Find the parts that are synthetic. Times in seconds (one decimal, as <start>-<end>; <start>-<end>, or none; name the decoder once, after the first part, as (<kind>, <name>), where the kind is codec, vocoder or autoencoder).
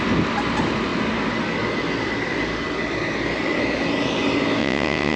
4.6-5.2 (vocoder, WaveNeXt)